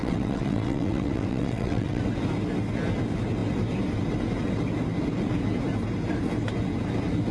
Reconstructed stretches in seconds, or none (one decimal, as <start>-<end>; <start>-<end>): 0.0-2.0